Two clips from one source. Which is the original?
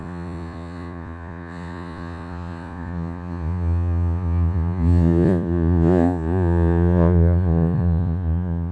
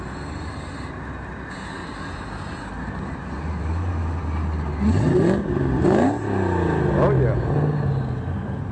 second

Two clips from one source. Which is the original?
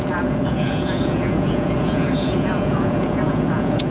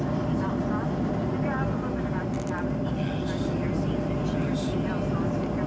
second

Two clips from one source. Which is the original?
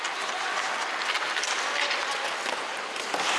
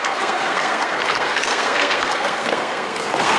first